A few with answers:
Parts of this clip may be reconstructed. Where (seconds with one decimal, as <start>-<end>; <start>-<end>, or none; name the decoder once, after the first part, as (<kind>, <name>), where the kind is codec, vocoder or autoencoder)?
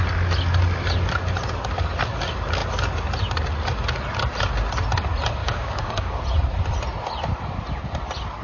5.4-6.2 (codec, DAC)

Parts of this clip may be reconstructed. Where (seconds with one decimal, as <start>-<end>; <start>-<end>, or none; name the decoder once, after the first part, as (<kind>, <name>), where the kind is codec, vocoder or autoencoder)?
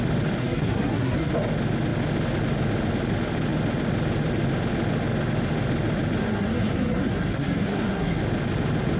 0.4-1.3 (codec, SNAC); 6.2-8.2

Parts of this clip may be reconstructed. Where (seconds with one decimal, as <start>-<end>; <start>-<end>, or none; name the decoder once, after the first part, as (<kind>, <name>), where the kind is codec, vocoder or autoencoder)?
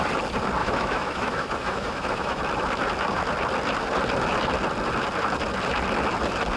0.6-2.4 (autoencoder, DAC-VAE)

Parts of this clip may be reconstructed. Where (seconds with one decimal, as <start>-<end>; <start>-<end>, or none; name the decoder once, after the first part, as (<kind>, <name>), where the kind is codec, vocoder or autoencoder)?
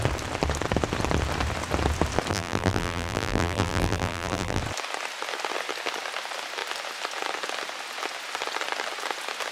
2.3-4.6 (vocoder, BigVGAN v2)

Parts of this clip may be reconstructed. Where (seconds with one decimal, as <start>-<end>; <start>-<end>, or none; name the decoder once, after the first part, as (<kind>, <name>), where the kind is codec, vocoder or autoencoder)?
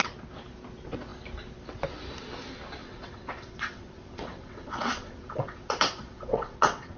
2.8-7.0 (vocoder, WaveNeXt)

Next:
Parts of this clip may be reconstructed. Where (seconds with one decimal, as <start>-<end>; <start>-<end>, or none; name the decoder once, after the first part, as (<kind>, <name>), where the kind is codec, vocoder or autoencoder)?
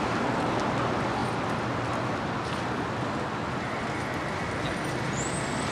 none